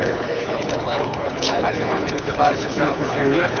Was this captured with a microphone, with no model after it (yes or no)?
no